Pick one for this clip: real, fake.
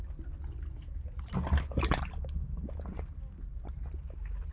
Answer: real